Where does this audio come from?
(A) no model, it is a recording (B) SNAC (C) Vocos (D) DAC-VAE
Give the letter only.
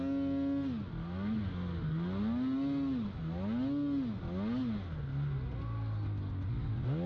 A